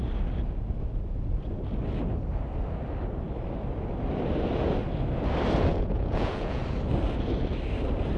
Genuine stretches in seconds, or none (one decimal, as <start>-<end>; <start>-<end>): 0.0-5.7; 6.6-8.2